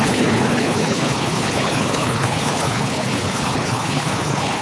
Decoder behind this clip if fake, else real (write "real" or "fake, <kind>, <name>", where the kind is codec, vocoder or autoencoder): fake, codec, HILCodec